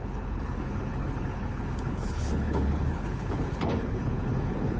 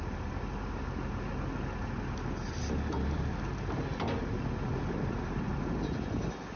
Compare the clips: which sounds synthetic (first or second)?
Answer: first